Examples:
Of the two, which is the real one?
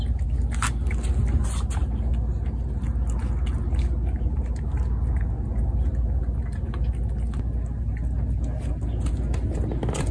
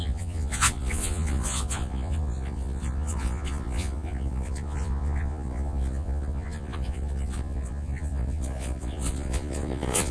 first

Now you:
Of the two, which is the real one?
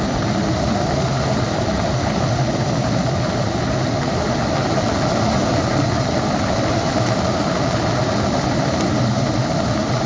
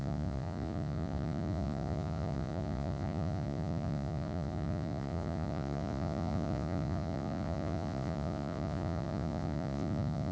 first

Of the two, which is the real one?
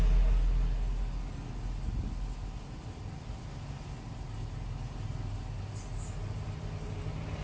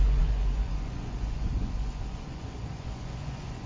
first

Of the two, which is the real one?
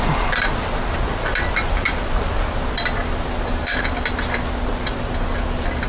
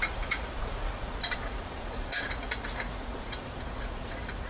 first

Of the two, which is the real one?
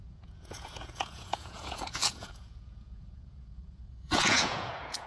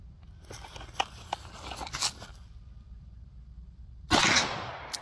second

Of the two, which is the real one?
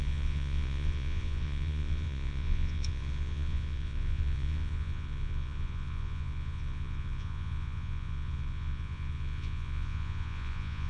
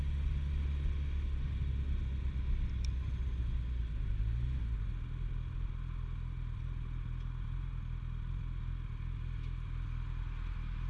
second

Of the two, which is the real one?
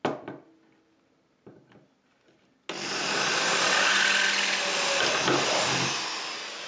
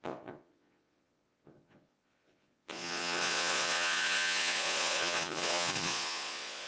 first